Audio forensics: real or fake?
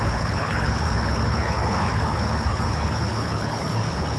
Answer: fake